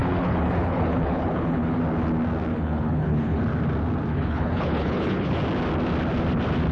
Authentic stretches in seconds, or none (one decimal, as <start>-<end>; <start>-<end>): 1.8-2.5; 3.4-4.1; 5.4-6.7

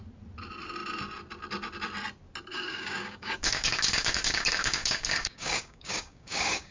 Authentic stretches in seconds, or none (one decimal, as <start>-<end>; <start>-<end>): 0.0-2.5

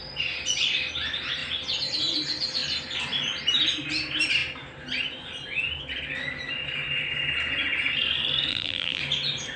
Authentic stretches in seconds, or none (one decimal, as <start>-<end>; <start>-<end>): 0.0-8.5; 9.0-9.6

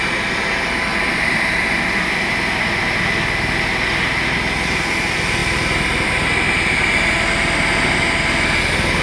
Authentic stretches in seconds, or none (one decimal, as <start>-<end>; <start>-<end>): 0.0-0.9; 1.6-5.4; 6.1-9.0

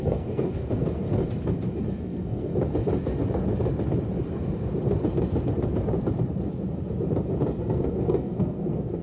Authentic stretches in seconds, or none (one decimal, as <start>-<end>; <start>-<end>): 1.2-2.0; 2.5-7.6